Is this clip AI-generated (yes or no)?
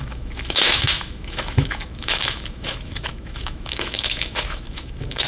yes